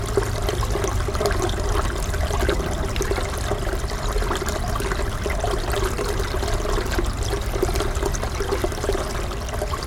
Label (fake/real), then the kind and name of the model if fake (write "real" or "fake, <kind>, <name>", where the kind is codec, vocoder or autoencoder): real